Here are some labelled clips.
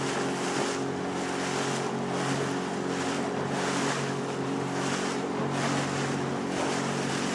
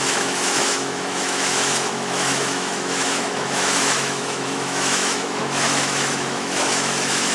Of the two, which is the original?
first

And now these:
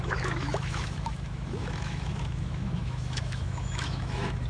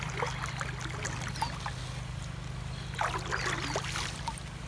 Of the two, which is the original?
second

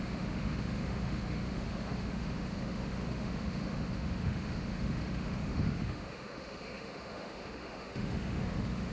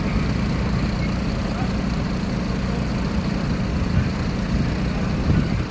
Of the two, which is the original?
second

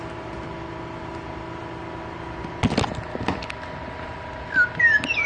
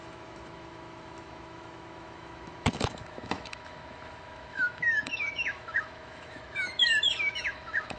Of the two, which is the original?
first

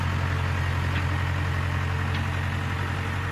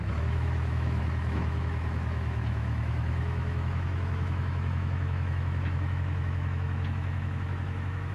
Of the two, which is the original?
first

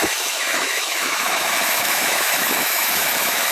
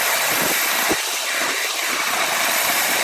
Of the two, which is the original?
second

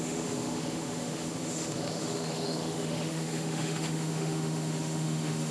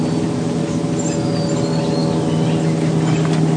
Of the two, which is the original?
second